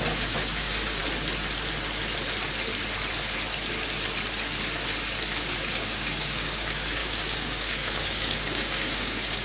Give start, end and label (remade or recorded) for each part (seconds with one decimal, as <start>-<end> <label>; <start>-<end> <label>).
0.0-1.0 remade; 1.0-5.7 recorded; 5.7-9.4 remade